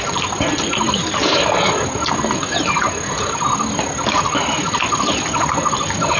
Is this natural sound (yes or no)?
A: yes